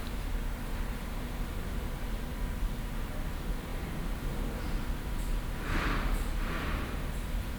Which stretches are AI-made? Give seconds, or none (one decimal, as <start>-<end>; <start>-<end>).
0.0-2.3; 3.0-3.7; 7.1-7.6